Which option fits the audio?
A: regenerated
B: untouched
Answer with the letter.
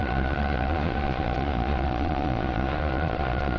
A